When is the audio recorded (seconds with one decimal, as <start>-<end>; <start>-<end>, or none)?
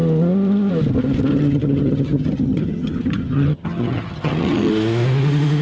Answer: 0.0-1.3; 4.7-5.6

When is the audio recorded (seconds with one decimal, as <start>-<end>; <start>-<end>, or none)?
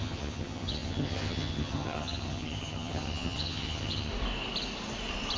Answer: 4.1-5.4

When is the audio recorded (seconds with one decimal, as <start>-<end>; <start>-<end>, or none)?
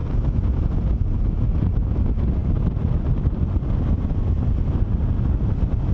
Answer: 0.0-5.9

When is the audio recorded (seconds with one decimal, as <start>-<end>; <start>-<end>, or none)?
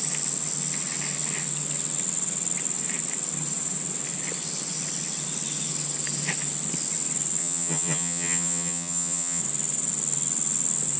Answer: 0.0-7.4; 9.4-11.0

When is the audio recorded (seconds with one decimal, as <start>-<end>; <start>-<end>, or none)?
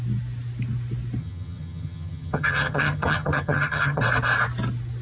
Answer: 0.0-1.2; 4.0-5.0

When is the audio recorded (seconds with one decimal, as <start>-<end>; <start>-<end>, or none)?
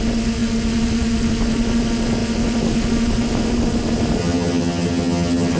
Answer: 0.0-4.2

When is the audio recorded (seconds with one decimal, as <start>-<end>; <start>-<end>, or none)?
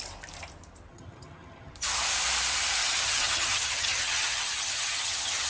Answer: 0.0-0.9; 1.7-2.8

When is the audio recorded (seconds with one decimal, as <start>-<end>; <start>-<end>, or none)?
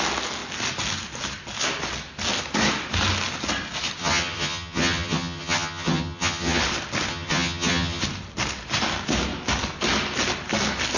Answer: 0.0-4.0; 6.6-7.1; 8.0-11.0